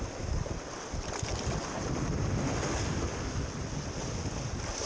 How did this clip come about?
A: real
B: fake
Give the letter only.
A